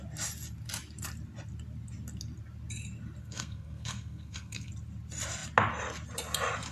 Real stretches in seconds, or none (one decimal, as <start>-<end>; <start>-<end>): 0.0-3.2; 4.7-6.7